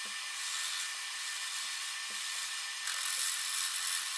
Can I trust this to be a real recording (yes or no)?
yes